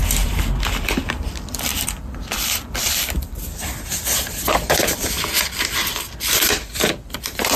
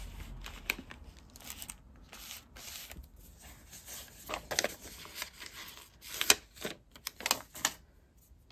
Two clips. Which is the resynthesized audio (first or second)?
first